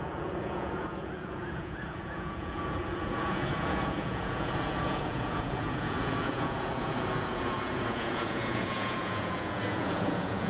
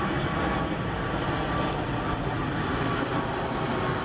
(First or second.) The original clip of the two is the second